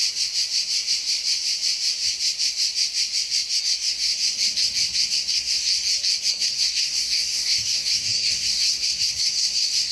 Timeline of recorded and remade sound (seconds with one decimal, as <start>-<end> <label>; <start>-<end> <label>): 0.0-3.6 recorded; 3.6-4.1 remade; 4.1-5.1 recorded; 5.1-5.7 remade; 5.7-6.3 recorded; 6.3-9.9 remade